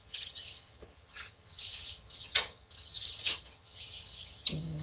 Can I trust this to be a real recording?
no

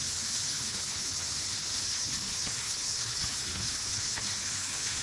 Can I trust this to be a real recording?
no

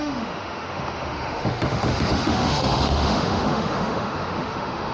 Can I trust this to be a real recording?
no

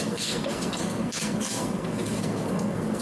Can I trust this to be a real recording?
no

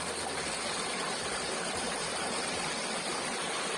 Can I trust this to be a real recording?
yes